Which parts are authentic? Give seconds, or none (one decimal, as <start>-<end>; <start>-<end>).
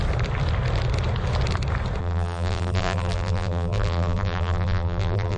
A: 0.0-2.0